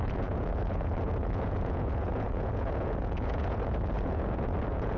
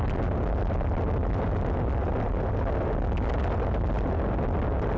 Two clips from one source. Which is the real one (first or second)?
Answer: second